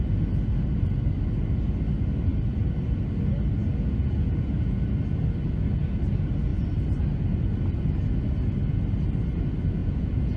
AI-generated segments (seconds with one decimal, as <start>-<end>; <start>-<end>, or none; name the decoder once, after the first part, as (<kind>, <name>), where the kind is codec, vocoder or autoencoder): 3.6-4.8 (vocoder, Vocos); 9.8-10.4